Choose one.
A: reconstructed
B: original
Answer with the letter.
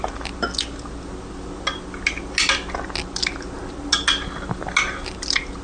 B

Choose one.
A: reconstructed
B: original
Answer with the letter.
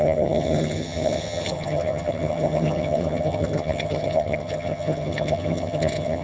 A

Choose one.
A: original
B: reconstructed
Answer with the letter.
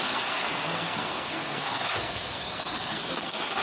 B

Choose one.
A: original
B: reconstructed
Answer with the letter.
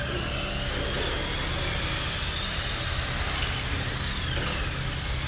A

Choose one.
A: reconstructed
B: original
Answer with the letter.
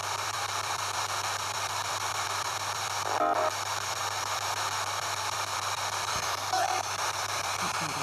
A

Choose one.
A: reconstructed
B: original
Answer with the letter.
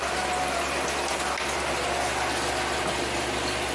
B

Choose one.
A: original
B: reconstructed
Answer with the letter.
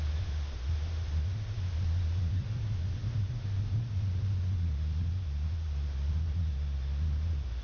A